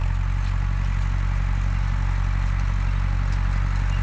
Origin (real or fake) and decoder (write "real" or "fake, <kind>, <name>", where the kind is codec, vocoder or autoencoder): real